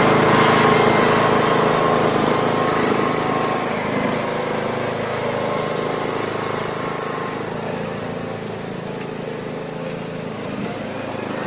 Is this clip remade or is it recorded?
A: recorded